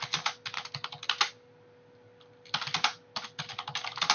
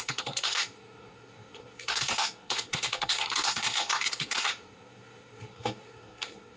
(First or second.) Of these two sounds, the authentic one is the first